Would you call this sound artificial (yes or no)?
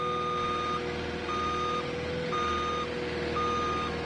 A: no